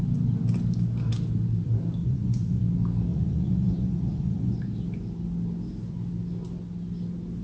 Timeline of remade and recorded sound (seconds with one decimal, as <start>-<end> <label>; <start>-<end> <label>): 0.0-2.0 recorded; 2.0-2.6 remade; 2.6-3.1 recorded; 3.1-4.6 remade; 4.6-7.4 recorded